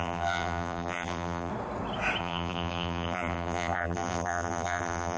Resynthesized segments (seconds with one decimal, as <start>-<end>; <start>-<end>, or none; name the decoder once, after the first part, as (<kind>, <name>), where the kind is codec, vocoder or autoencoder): 0.0-1.5 (vocoder, BigVGAN v2); 2.2-5.2